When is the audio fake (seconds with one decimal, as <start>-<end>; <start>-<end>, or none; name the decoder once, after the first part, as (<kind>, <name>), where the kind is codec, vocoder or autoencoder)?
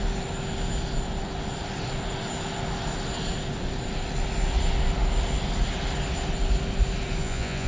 7.2-7.7 (vocoder, Vocos)